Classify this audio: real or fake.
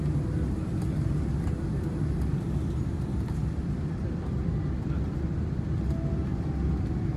real